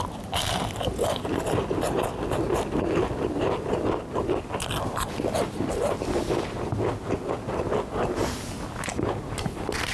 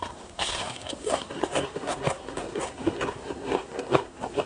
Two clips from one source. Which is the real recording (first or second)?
first